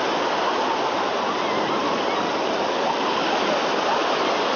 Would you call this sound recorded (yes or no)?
yes